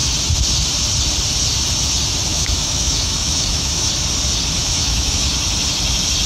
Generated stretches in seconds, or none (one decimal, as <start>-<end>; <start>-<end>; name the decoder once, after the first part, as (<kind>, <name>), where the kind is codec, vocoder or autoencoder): 2.3-3.9 (autoencoder, DAC-VAE); 4.6-5.3